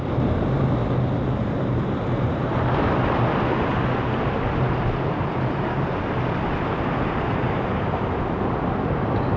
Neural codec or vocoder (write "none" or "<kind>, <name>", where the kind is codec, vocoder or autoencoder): none